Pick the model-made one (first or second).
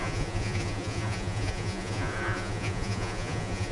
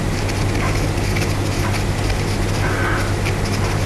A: first